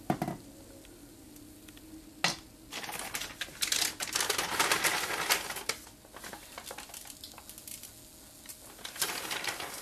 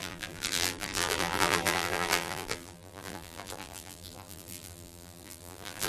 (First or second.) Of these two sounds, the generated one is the second